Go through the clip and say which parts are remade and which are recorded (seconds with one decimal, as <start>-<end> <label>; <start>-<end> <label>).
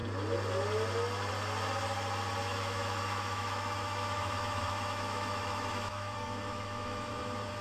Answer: 0.0-2.5 recorded; 2.5-7.1 remade; 7.1-7.6 recorded